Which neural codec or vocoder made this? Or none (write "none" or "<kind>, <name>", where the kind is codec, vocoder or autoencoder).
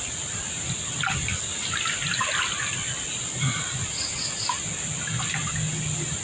none